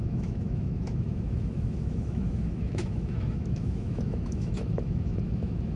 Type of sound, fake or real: fake